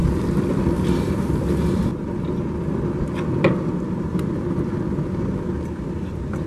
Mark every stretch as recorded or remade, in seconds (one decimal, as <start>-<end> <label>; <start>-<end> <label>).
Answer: 0.0-4.1 recorded; 4.1-4.7 remade; 4.7-6.5 recorded